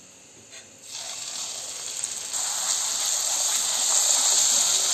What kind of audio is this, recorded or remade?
recorded